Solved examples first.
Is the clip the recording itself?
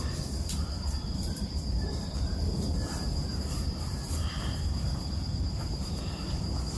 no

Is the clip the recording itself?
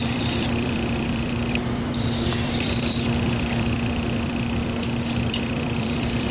no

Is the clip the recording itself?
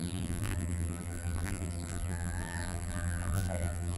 no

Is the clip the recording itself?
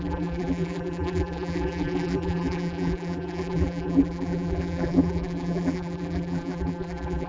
no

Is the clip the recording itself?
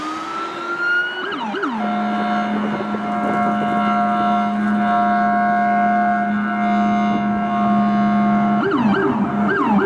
yes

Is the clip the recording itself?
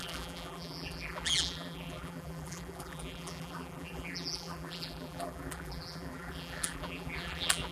no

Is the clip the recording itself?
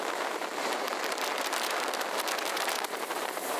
no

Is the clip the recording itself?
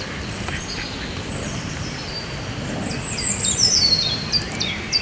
no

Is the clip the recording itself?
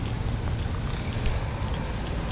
yes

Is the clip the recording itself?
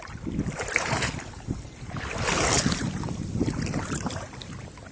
yes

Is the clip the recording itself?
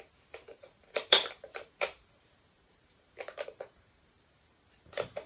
no